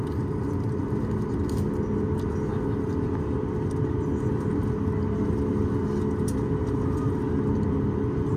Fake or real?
real